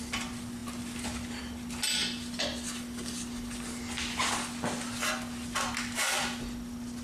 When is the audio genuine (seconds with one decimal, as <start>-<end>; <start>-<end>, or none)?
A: 0.0-7.0

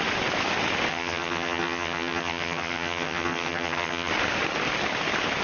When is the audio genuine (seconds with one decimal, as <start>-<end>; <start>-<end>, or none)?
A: 0.0-0.9; 4.1-5.4